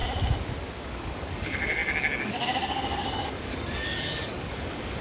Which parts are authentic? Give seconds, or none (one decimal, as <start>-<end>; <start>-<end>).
0.0-0.8